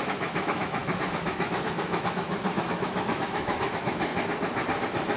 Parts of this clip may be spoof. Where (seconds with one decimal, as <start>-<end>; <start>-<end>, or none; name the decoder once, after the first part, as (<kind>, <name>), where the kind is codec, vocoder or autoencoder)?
0.0-4.1 (autoencoder, DAC-VAE)